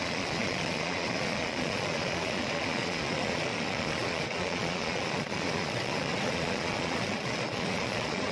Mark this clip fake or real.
fake